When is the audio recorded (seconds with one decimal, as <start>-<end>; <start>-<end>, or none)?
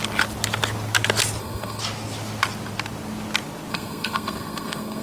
0.0-1.4; 1.8-3.7